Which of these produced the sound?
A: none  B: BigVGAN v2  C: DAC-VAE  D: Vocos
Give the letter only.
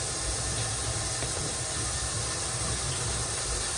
A